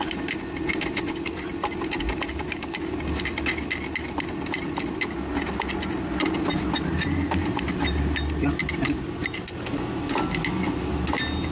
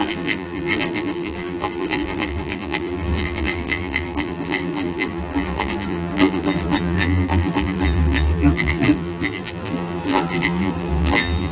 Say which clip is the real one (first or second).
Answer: first